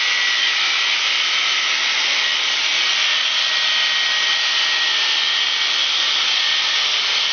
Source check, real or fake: real